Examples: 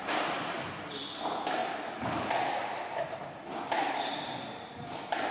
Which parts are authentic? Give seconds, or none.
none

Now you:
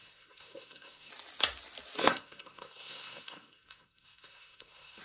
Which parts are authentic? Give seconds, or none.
1.1-2.0

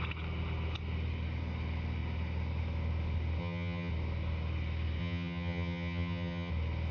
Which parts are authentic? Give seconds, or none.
0.0-3.4; 3.9-5.0; 6.5-6.9

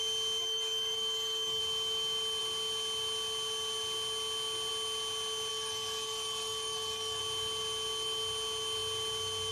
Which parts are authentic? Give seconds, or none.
0.0-0.4; 1.6-5.5; 7.2-9.5

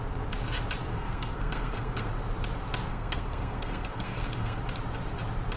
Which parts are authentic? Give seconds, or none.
0.0-0.9; 2.1-2.9; 4.6-5.6

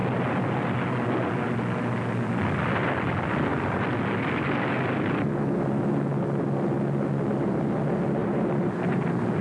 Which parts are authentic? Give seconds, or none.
0.0-8.2; 8.8-9.4

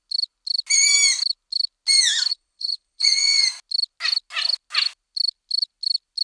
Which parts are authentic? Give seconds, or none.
0.0-2.3; 3.4-6.2

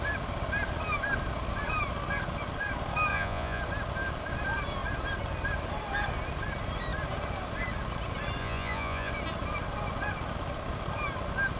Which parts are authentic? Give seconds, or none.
0.0-3.1; 3.6-8.4; 9.1-11.6